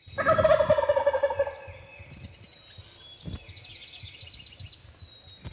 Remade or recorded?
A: recorded